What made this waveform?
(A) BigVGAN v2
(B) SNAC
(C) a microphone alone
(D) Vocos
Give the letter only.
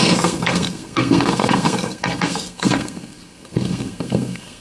B